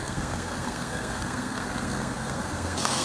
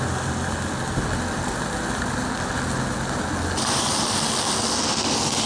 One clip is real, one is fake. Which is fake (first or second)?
first